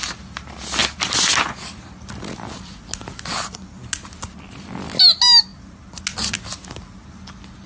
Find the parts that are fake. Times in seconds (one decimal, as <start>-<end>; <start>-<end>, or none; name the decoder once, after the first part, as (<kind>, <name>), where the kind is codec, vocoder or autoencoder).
none